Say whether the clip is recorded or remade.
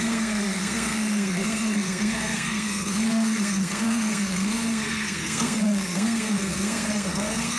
remade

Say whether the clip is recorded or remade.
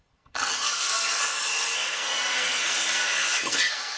remade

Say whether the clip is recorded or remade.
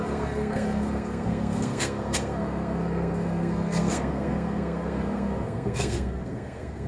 remade